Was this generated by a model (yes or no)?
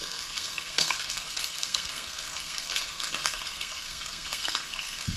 yes